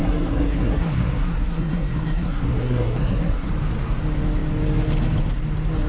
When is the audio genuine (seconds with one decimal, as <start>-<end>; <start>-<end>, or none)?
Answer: 3.5-5.9

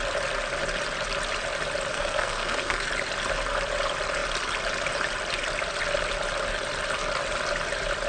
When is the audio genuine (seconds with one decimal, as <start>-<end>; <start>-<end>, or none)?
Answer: 0.0-1.9; 2.9-8.1